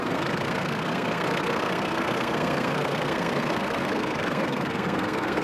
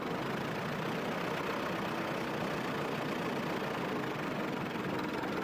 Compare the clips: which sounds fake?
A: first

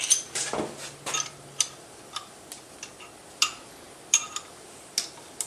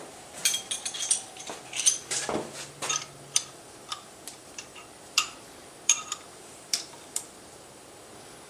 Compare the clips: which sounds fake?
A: second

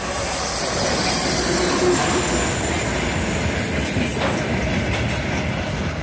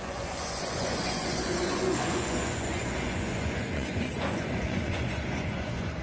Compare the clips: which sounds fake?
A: second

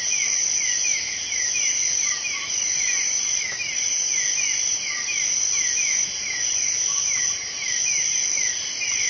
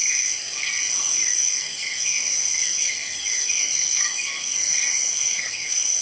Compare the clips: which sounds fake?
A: second